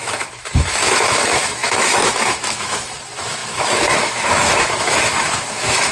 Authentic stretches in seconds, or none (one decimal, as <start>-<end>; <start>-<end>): none